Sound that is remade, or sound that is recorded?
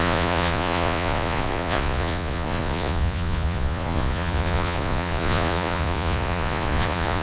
remade